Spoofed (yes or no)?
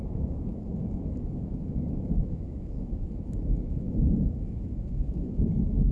yes